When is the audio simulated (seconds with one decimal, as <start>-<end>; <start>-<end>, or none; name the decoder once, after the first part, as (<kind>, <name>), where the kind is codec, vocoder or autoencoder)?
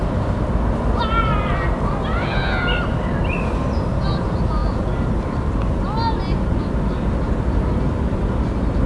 none